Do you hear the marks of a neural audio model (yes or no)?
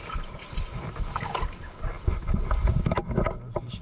no